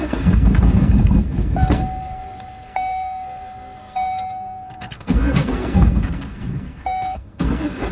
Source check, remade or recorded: remade